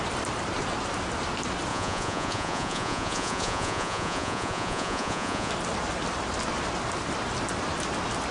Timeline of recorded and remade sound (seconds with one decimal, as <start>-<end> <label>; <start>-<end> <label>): 0.0-1.7 recorded; 1.7-5.5 remade; 5.5-8.3 recorded